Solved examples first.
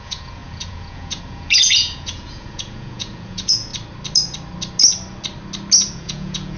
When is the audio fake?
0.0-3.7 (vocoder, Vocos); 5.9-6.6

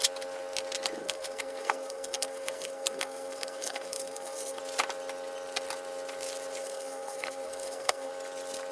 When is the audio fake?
1.0-4.6 (codec, SNAC); 6.6-8.1